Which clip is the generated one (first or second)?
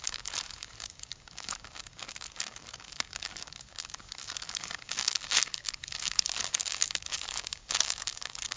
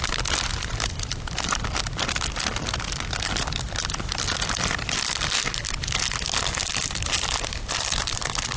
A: first